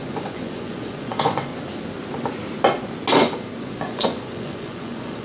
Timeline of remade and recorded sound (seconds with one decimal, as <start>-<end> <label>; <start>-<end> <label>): 0.0-1.5 remade; 1.5-3.6 recorded; 3.6-5.2 remade